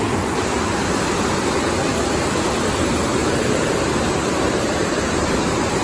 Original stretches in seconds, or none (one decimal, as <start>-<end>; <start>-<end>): 0.0-3.1; 5.3-5.8